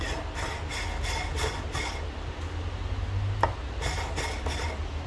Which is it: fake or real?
real